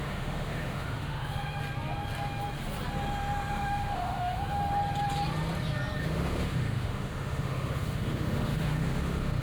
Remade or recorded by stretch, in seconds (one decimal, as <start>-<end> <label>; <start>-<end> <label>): 0.0-1.6 remade; 1.6-3.5 recorded; 3.5-4.6 remade; 4.6-6.0 recorded; 6.0-9.4 remade